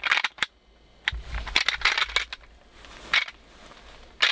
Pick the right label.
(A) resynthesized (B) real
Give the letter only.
B